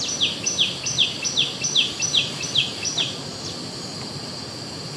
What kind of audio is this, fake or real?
real